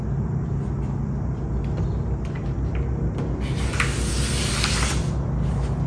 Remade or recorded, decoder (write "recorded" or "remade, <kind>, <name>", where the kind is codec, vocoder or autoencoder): recorded